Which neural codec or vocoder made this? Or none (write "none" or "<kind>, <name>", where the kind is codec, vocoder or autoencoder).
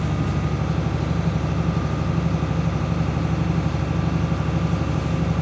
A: none